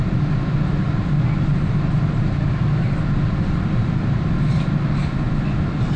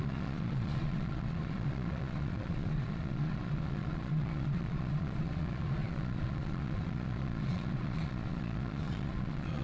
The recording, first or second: first